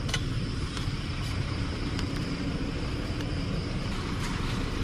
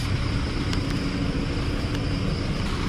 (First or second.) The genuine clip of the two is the second